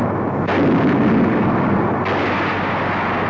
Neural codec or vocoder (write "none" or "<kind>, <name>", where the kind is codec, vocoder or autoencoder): none